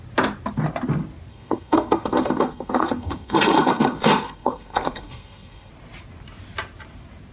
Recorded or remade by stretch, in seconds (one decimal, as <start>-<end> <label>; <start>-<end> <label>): 0.0-1.3 recorded; 1.3-5.7 remade; 5.7-7.3 recorded

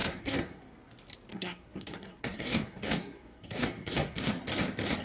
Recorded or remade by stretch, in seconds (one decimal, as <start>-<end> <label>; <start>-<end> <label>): 0.0-0.6 remade; 0.6-1.3 recorded; 1.3-4.3 remade; 4.3-5.0 recorded

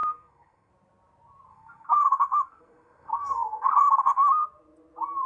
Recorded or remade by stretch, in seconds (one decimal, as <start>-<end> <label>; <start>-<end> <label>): 0.0-0.7 remade; 0.7-1.5 recorded; 1.5-4.3 remade; 4.3-5.3 recorded